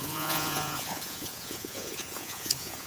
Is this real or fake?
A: fake